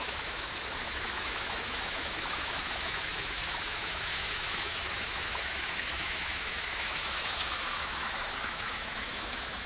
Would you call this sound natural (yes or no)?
no